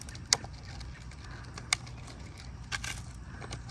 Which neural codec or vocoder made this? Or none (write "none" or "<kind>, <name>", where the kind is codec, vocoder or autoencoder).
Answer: none